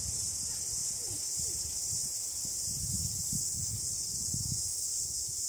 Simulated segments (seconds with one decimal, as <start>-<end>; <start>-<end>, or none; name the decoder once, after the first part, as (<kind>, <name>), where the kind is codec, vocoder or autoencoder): 0.8-2.3 (vocoder, BigVGAN v2)